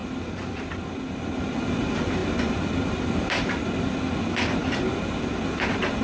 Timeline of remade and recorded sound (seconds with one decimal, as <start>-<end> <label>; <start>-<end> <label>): 0.0-6.0 recorded